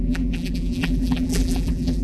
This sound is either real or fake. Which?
fake